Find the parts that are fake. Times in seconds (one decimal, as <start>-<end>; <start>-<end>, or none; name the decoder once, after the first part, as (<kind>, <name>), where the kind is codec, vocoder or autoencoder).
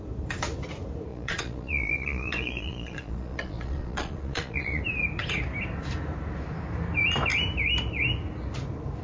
1.1-4.8 (vocoder, Vocos)